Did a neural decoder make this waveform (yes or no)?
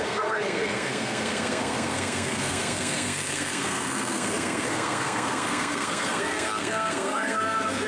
yes